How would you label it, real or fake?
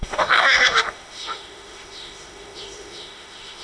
fake